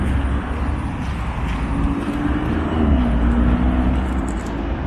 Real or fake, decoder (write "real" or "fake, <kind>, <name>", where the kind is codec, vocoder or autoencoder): real